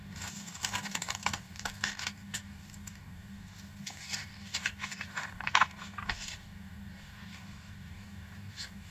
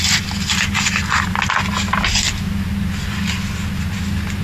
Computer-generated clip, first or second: first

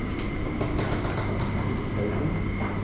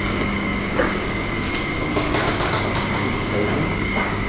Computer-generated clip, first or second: second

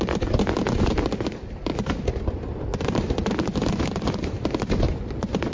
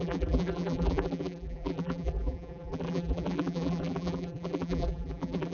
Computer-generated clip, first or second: second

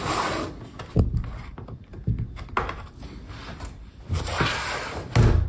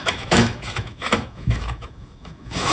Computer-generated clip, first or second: second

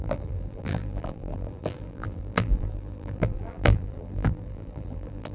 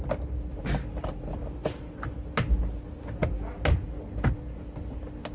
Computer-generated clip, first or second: first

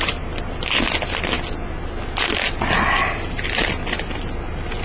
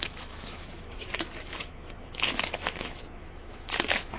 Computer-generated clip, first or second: second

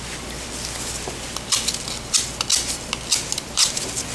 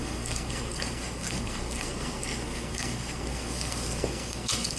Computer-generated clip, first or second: second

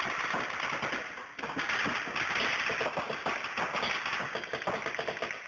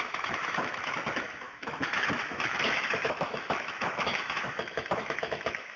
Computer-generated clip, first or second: second